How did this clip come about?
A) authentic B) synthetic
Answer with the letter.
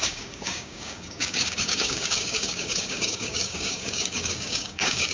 B